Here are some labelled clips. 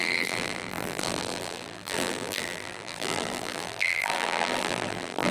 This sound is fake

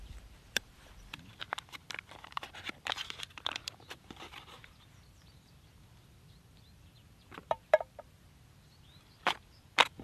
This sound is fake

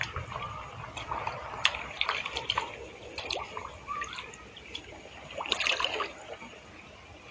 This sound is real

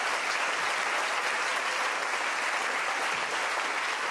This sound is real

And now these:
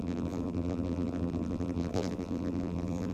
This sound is fake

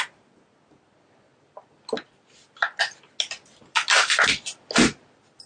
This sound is real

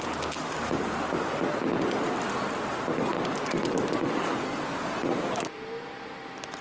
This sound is real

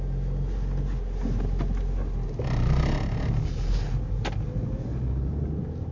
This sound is real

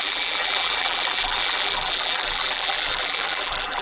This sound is fake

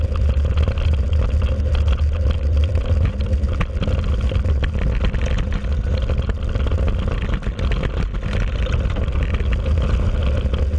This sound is real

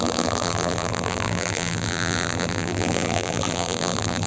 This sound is fake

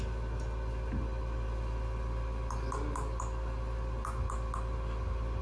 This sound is real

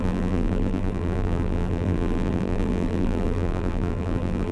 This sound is fake